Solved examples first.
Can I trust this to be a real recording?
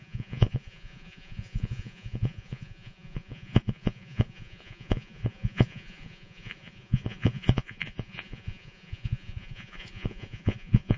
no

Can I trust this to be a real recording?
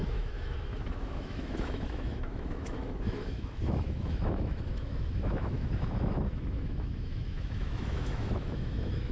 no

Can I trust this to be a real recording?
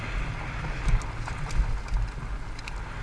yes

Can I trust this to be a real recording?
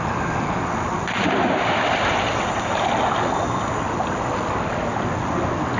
yes